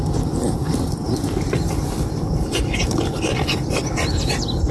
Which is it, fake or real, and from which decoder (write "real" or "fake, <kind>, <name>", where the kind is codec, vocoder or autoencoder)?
real